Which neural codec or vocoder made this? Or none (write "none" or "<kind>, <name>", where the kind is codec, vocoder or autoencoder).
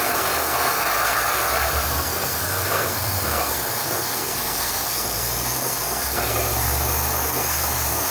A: codec, SNAC